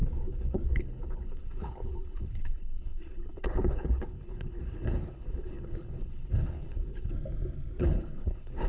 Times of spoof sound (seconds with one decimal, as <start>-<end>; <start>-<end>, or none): 0.0-7.1; 7.8-8.7